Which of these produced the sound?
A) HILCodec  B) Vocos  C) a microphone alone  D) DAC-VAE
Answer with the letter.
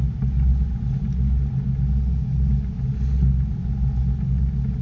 C